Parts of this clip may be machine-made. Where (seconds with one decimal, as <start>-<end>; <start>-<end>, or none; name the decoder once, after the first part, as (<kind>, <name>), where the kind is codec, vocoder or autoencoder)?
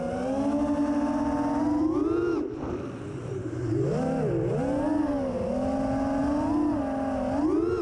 1.8-2.4 (vocoder, BigVGAN v2)